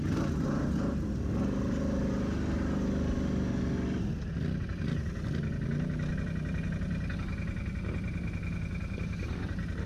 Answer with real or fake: real